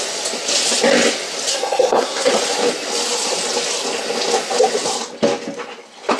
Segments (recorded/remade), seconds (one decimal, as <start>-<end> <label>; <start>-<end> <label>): 0.0-1.5 recorded; 1.5-2.3 remade; 2.3-6.2 recorded